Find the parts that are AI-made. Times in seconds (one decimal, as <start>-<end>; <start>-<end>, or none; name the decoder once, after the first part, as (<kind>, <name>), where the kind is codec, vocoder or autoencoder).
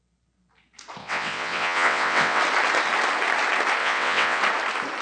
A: 1.0-2.4 (vocoder, WaveNeXt); 3.8-4.4